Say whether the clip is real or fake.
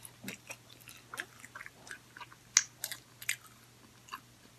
real